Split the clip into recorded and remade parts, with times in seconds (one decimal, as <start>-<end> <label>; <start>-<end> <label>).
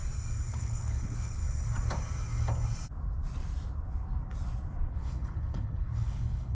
0.0-0.5 recorded; 0.5-1.4 remade; 1.4-4.9 recorded; 4.9-6.5 remade